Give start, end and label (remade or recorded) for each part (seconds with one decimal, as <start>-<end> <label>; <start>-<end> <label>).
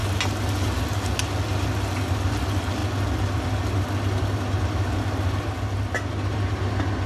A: 0.0-7.1 recorded